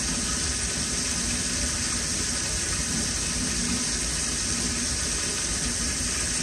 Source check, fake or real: real